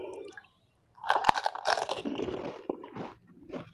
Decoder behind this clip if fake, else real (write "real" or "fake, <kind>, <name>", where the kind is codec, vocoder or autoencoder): fake, vocoder, BigVGAN v2